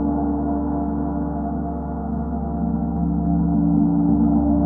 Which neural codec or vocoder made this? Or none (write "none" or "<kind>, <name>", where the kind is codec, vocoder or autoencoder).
autoencoder, DAC-VAE